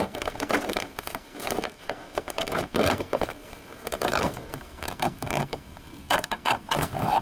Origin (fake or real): fake